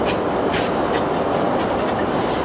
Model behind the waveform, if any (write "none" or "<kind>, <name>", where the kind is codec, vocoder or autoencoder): none